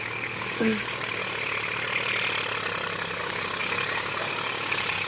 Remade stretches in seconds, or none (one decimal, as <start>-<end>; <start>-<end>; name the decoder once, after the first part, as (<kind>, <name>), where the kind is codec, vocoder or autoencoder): 0.0-1.2 (codec, DAC); 3.2-5.1